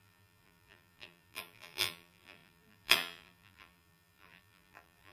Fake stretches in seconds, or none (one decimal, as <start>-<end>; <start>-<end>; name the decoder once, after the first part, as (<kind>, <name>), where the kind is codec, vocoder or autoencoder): 0.0-5.1 (vocoder, BigVGAN v2)